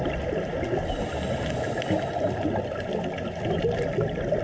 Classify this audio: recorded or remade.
recorded